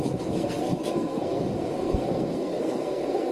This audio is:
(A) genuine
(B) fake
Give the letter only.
B